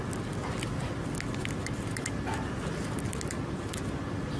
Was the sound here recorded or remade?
recorded